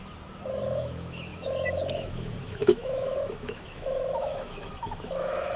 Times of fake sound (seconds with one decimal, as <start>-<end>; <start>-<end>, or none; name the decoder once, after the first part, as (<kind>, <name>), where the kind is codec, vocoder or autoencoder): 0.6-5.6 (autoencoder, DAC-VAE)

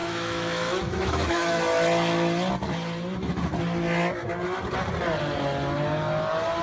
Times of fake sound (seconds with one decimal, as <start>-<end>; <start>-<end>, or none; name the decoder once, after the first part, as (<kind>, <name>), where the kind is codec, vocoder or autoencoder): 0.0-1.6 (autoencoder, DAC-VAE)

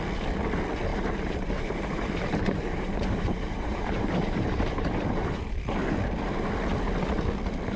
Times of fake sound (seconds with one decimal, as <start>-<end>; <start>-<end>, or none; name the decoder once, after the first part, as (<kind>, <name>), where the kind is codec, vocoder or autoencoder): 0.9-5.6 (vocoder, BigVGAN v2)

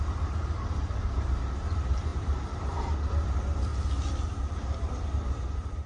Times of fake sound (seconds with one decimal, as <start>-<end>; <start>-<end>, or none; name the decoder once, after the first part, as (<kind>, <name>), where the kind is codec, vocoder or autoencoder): 0.0-3.7 (vocoder, BigVGAN v2); 4.2-5.9

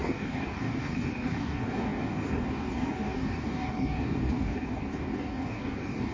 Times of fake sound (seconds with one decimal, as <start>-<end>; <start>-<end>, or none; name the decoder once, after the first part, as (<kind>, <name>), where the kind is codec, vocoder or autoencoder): 0.0-6.1 (codec, DAC)

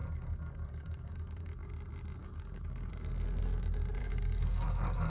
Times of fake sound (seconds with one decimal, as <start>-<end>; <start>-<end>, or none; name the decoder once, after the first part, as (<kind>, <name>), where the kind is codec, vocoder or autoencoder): 0.0-1.7 (codec, DAC); 2.2-2.9; 4.0-5.1

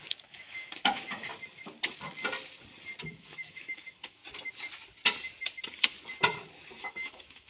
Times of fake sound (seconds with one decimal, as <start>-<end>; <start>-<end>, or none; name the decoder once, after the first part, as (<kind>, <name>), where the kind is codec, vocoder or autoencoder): 0.0-1.3 (autoencoder, DAC-VAE); 3.0-4.2; 6.8-7.5

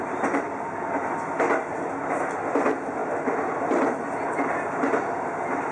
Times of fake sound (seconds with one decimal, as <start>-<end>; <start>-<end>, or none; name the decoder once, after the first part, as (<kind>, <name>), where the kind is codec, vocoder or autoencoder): none